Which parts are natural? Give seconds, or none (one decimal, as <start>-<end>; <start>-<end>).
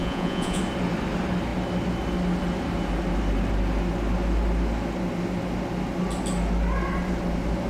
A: 0.6-7.7